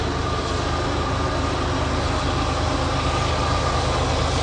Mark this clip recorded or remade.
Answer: recorded